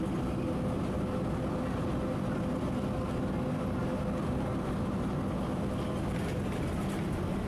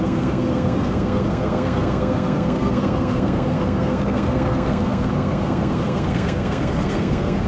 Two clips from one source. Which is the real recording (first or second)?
first